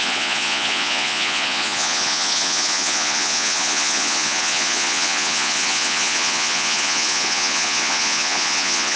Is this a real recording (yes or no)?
no